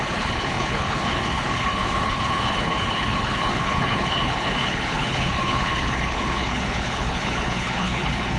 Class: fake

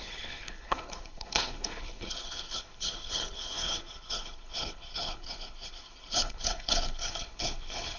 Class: fake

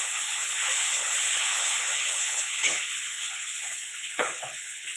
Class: fake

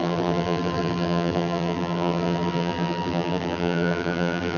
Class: fake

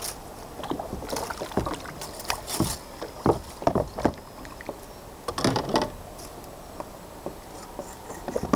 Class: real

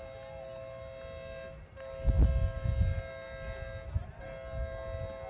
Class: real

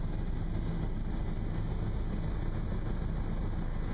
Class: real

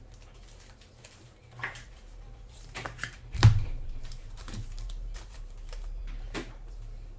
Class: fake